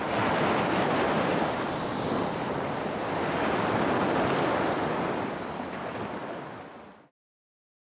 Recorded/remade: recorded